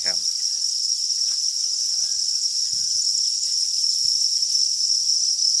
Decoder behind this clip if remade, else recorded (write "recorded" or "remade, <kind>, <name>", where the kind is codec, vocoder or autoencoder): recorded